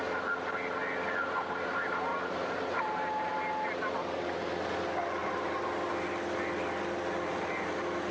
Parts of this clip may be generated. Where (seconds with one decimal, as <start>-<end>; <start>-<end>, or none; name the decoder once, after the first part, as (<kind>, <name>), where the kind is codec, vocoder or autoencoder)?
2.1-3.3 (vocoder, BigVGAN v2); 5.2-5.9